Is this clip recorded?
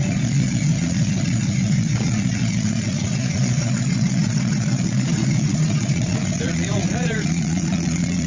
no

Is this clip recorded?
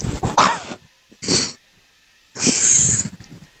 yes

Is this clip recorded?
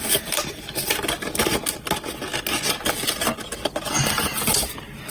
yes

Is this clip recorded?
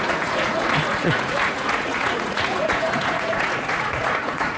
no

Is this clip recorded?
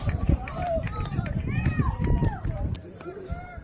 no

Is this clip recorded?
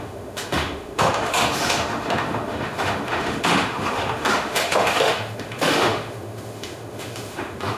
no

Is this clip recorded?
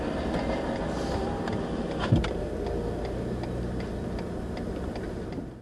yes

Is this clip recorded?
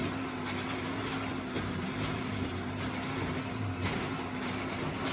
yes